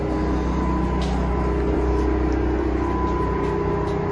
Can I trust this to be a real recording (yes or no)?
yes